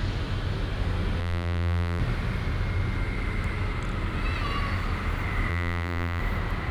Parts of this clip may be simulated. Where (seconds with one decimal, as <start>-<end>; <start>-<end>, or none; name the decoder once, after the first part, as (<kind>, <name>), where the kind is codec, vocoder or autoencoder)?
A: 1.2-2.0 (vocoder, BigVGAN v2); 5.5-6.2